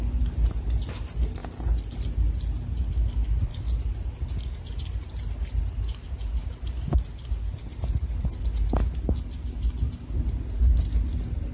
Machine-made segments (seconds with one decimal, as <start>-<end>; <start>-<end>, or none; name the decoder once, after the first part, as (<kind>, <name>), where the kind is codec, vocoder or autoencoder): none